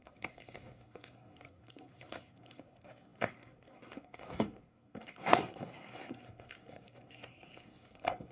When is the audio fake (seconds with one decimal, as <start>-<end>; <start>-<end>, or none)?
0.0-8.3